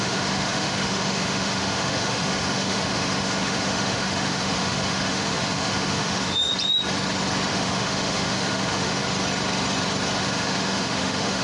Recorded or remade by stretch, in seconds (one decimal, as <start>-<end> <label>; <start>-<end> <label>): 0.0-6.5 remade; 6.5-7.5 recorded; 7.5-9.0 remade; 9.0-10.2 recorded; 10.2-11.4 remade